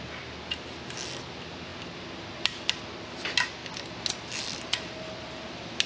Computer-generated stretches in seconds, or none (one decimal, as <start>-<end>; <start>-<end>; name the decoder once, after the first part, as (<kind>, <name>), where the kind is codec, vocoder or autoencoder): none